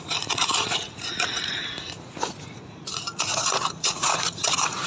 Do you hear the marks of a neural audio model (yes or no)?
yes